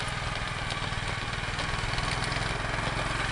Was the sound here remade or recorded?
recorded